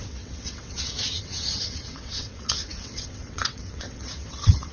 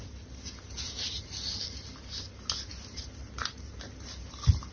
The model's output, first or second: first